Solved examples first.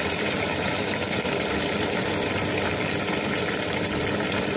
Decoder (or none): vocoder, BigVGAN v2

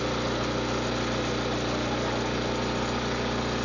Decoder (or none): none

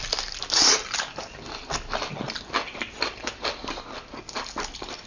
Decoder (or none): none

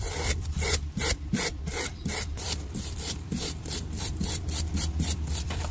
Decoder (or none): vocoder, BigVGAN v2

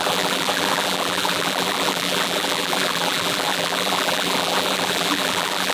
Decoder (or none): vocoder, BigVGAN v2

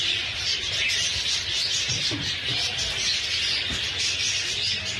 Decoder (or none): none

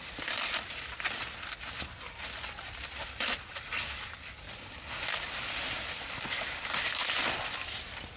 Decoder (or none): vocoder, BigVGAN v2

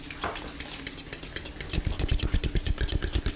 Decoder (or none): none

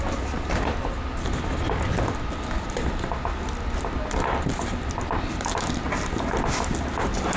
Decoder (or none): none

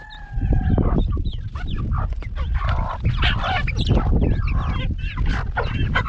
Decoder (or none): none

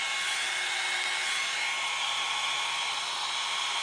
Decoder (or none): none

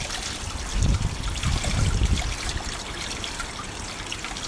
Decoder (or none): none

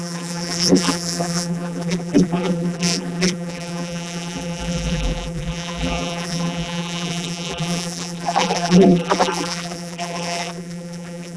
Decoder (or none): vocoder, BigVGAN v2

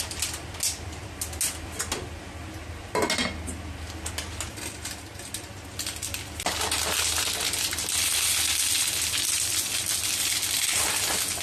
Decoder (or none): none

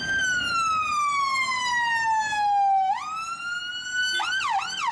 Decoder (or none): none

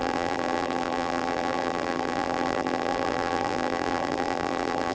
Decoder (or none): vocoder, BigVGAN v2